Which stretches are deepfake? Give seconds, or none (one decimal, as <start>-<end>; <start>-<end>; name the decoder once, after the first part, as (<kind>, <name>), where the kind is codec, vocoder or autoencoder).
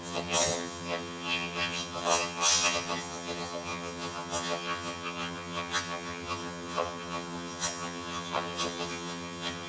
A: 0.0-9.7 (vocoder, HiFi-GAN)